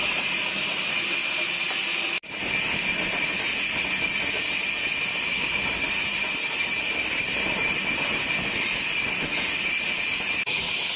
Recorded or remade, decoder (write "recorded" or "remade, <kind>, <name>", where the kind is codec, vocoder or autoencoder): recorded